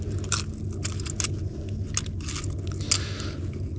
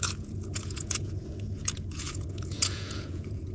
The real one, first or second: first